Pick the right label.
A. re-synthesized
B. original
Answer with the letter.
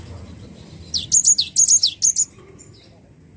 B